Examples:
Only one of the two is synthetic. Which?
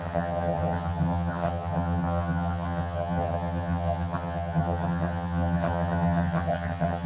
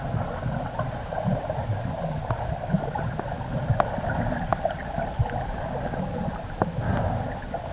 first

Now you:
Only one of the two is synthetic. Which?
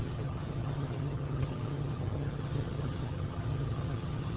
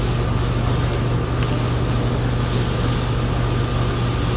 first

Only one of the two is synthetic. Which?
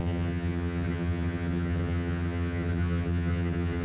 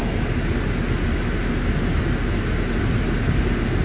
first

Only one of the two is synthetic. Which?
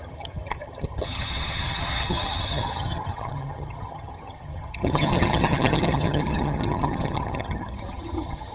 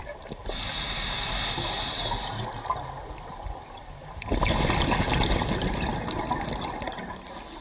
first